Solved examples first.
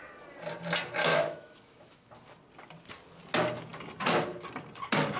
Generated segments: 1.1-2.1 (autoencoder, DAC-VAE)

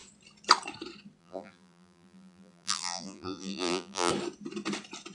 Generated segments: 1.2-4.1 (vocoder, BigVGAN v2)

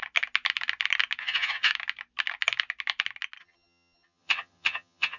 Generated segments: 1.2-1.7 (vocoder, HiFi-GAN); 3.4-5.2

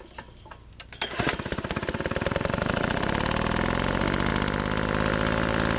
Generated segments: none

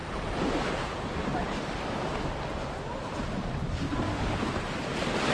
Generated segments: 0.0-0.7 (vocoder, BigVGAN v2)

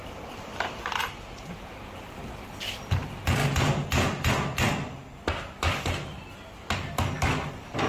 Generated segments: 0.0-2.2 (vocoder, BigVGAN v2); 2.8-3.4; 7.5-7.9

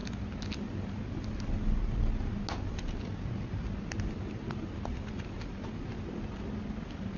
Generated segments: none

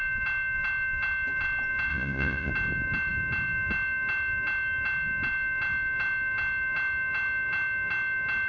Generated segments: 1.9-2.5 (vocoder, Vocos)